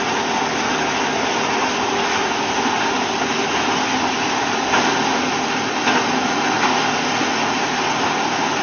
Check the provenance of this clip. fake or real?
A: real